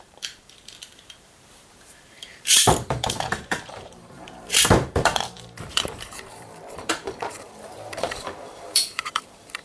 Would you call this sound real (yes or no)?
no